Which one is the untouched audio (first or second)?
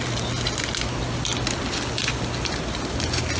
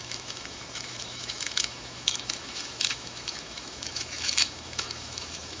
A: first